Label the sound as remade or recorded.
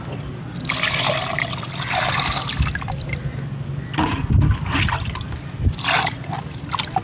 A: recorded